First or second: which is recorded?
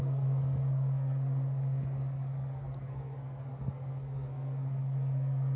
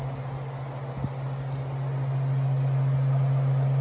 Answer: second